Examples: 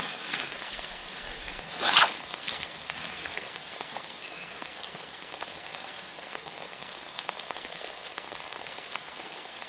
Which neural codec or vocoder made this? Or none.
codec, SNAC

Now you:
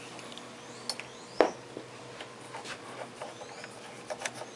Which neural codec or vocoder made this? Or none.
none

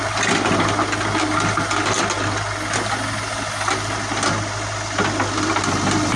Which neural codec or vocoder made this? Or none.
none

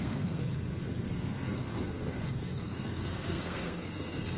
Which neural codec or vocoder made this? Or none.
codec, SNAC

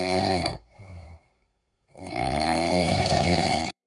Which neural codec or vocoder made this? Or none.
codec, SNAC